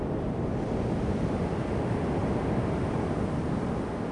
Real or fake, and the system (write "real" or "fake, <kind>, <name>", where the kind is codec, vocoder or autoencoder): real